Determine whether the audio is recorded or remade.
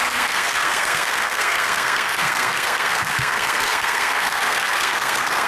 remade